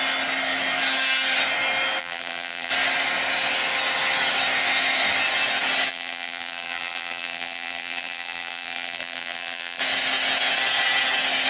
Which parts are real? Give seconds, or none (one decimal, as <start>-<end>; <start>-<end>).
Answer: 0.0-2.0; 2.7-5.9; 9.8-11.5